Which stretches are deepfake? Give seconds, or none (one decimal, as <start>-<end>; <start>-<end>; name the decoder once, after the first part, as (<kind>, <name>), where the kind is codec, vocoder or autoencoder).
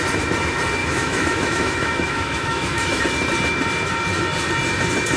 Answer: 0.8-3.0 (autoencoder, DAC-VAE)